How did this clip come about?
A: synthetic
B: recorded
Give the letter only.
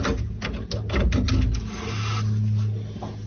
B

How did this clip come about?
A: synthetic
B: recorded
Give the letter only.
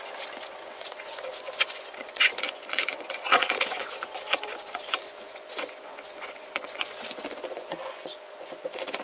A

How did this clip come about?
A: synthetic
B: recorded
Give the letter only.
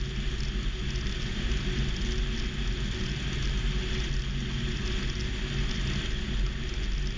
B